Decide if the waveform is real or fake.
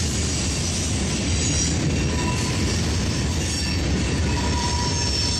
real